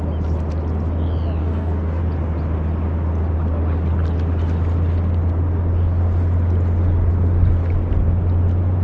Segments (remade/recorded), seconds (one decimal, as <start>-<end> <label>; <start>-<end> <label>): 0.0-1.4 recorded; 1.4-2.0 remade; 2.0-8.8 recorded